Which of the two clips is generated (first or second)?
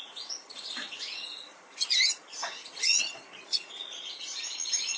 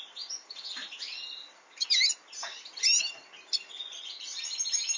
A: first